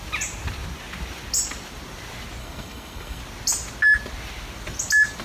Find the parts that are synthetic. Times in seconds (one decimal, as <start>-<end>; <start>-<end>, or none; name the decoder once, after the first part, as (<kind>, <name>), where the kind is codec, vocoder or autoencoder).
2.4-3.2 (codec, SNAC)